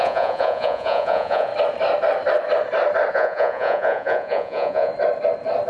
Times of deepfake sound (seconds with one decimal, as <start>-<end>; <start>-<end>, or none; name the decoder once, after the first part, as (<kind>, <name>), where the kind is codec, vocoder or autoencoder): 0.0-1.5 (vocoder, Vocos); 3.1-4.9

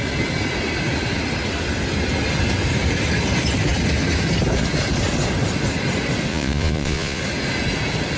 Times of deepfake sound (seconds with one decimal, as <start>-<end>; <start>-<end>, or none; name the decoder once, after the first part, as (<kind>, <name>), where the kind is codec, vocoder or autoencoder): 6.3-7.2 (vocoder, Vocos)

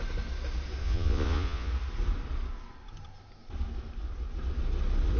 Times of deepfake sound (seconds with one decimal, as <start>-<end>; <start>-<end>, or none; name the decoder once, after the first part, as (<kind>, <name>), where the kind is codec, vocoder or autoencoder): 0.8-1.7 (vocoder, Vocos)

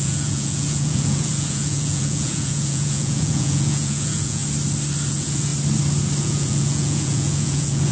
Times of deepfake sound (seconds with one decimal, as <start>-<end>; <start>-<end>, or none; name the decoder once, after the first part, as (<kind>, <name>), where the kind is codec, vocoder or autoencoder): 0.0-4.4 (vocoder, Vocos); 5.1-5.5; 6.2-7.9

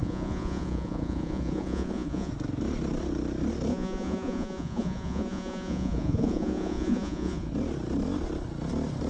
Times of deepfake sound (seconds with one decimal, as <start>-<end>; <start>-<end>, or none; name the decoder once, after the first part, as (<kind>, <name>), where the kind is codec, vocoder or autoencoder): 0.0-2.3 (vocoder, Vocos); 3.7-7.5

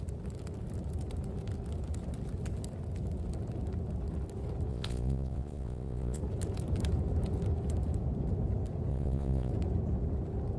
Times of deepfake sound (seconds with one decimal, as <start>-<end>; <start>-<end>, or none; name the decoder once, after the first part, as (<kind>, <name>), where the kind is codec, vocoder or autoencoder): 4.7-6.2 (vocoder, Vocos); 8.9-9.5